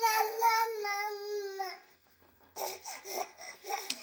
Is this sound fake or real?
fake